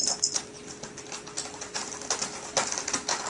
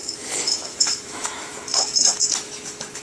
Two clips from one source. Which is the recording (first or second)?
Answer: first